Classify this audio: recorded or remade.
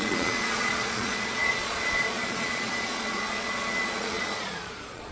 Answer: remade